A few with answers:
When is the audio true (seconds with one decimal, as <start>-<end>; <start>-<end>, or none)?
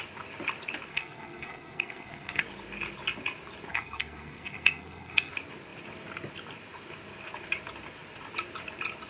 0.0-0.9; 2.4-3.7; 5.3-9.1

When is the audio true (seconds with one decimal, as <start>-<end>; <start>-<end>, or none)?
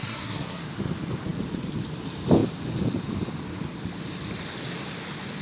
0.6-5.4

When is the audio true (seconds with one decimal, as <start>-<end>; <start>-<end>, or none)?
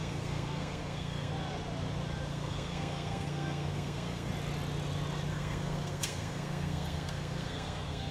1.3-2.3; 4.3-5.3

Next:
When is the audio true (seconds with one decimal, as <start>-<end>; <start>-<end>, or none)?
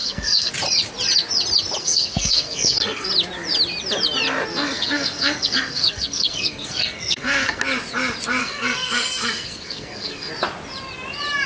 0.5-1.8; 3.1-4.5; 7.6-8.4; 10.3-11.5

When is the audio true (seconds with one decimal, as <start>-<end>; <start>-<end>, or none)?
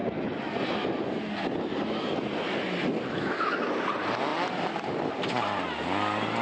0.0-6.4